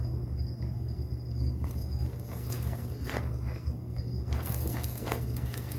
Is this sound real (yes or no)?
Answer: no